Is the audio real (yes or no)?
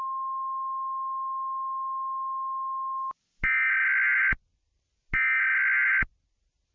yes